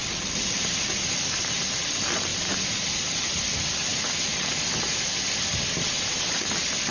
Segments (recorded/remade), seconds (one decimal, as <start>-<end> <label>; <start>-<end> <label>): 0.0-6.9 recorded